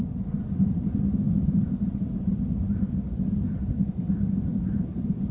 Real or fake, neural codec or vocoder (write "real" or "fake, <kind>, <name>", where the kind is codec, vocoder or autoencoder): real